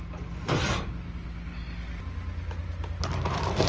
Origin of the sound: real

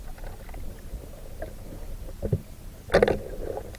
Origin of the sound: real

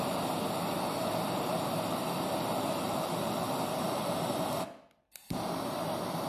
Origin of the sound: real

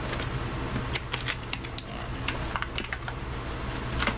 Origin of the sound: real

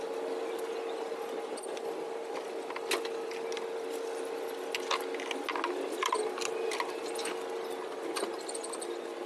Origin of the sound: real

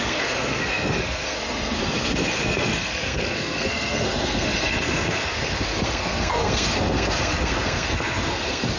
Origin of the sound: fake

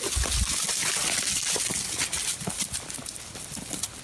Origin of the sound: real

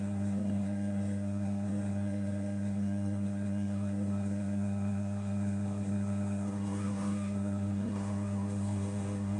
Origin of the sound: fake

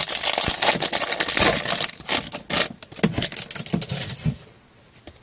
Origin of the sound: real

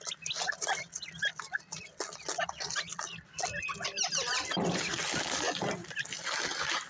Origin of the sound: real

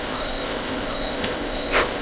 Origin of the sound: fake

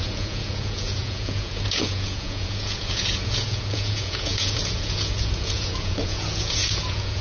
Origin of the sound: fake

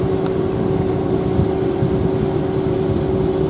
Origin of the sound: real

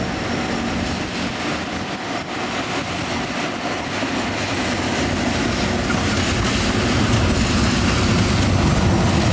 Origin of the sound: real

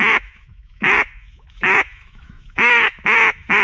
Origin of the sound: fake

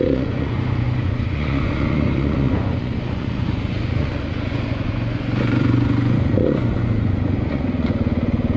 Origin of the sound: fake